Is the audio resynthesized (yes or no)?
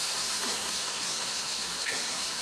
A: yes